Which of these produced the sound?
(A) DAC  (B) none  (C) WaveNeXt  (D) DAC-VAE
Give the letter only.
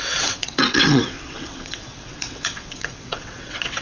C